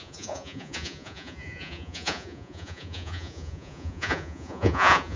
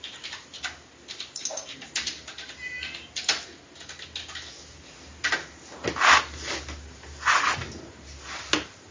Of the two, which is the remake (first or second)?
first